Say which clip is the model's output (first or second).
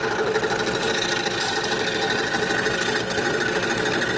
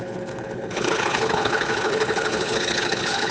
second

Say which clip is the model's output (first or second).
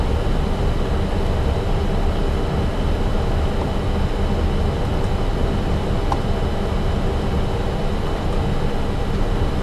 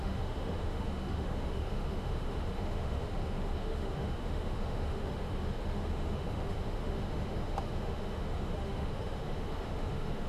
second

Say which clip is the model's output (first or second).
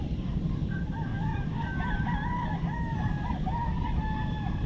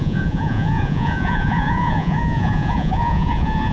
second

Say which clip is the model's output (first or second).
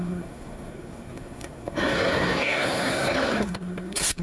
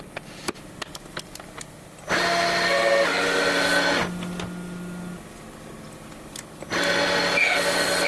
first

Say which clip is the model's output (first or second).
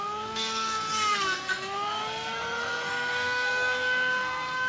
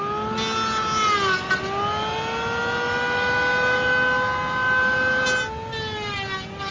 first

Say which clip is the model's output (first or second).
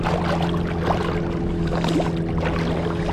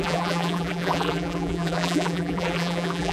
second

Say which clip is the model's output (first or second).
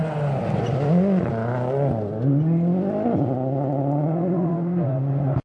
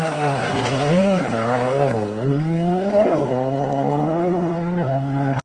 second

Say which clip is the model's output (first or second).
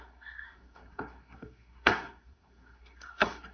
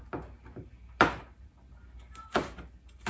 first